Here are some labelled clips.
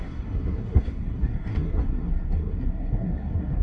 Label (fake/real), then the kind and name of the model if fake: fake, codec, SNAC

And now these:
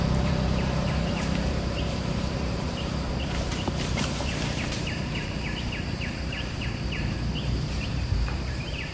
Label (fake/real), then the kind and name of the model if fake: fake, vocoder, BigVGAN v2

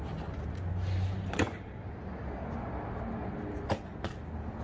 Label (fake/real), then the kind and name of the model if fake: real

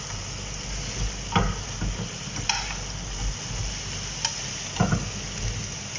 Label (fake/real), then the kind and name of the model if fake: real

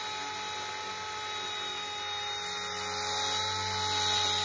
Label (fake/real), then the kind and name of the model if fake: real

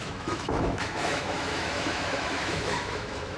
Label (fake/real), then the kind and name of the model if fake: fake, autoencoder, DAC-VAE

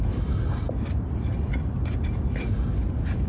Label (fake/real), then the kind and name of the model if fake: real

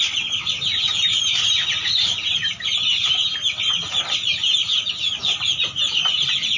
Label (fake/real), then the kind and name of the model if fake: real